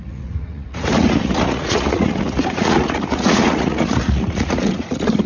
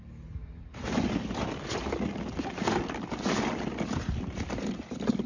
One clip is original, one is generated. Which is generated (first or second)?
first